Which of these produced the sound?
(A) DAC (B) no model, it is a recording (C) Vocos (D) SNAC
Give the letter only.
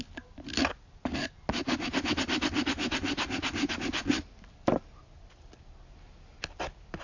B